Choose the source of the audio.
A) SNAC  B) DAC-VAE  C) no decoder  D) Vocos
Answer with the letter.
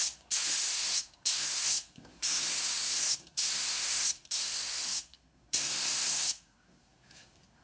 A